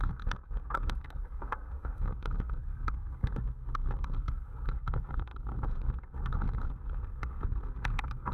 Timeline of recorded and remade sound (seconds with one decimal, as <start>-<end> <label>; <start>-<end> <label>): 0.0-8.3 remade